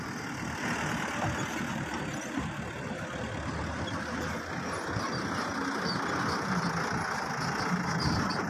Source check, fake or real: real